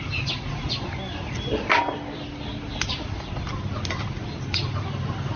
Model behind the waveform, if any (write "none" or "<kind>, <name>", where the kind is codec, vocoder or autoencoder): none